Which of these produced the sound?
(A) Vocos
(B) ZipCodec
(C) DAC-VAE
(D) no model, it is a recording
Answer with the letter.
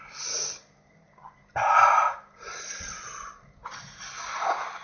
D